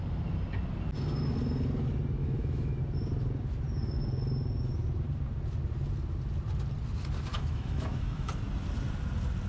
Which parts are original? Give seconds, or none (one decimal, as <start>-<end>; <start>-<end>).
0.0-2.2; 2.8-7.3; 8.3-9.5